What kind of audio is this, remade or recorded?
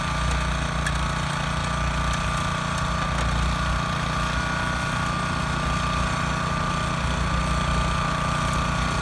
recorded